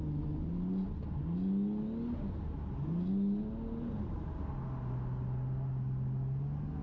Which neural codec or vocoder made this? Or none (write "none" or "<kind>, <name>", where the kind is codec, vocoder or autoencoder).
none